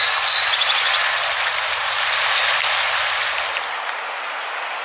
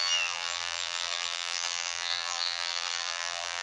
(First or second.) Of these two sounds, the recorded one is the first